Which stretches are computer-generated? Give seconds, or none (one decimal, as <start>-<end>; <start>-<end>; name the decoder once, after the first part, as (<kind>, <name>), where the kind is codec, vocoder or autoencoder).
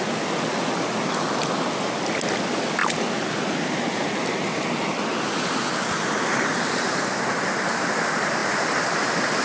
none